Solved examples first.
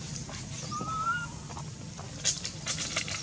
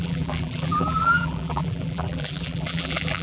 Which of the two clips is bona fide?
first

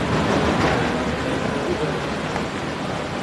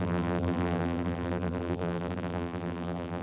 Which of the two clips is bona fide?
first